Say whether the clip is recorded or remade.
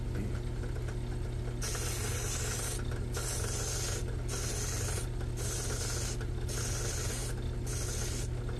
recorded